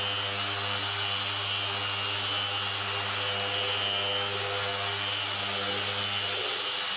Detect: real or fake real